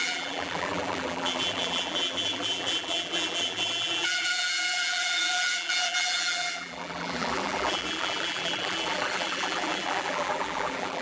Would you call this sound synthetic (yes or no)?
yes